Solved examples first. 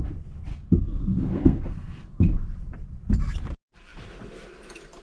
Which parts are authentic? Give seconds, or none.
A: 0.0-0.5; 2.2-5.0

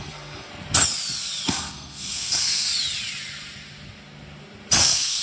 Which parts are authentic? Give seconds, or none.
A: 0.5-1.5; 2.7-4.8

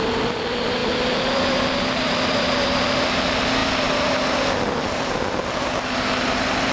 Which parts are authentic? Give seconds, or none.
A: 0.0-0.8; 3.1-6.7

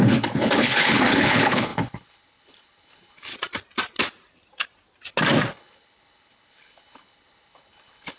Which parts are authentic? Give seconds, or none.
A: 3.3-5.5